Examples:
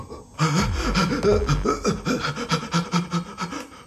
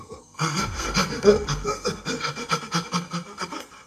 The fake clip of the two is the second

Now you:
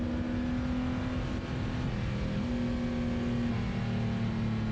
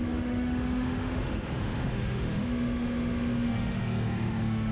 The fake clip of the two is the second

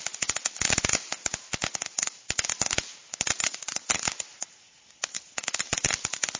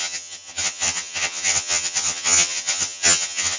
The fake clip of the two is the second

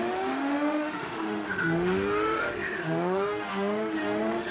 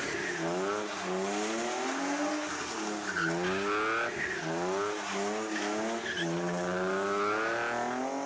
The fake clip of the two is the first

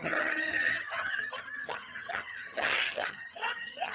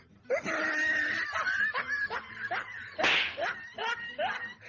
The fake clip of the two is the first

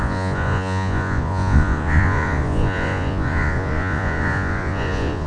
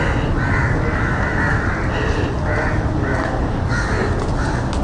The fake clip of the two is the first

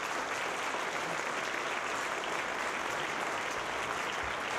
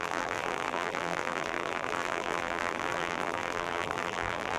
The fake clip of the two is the second